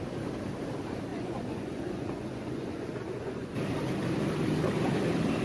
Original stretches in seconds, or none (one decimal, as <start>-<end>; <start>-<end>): 0.0-1.1; 3.5-5.4